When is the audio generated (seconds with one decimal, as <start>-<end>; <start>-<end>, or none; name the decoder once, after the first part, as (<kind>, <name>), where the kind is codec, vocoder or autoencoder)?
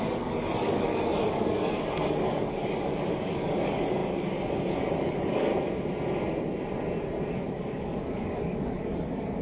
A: 0.0-5.5 (codec, DAC); 7.5-9.4